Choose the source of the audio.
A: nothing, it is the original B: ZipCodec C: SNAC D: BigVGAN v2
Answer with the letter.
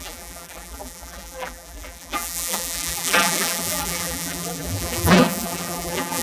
D